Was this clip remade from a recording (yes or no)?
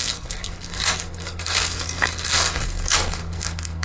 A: yes